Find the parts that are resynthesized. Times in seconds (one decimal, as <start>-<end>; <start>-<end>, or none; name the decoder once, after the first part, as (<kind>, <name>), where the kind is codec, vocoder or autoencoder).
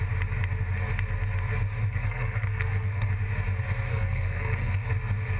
1.8-3.1 (codec, SNAC); 3.9-4.9